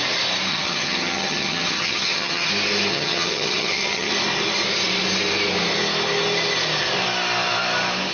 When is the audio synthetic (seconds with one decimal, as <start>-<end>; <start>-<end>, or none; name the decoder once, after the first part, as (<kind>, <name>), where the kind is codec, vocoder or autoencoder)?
0.5-2.5 (vocoder, HiFi-GAN); 2.9-4.1